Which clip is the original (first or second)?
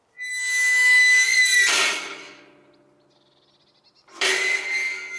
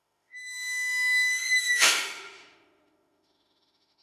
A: first